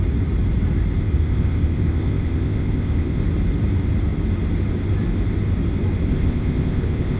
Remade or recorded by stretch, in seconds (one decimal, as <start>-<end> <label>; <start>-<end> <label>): 0.0-1.0 recorded; 1.0-3.2 remade; 3.2-6.1 recorded; 6.1-7.2 remade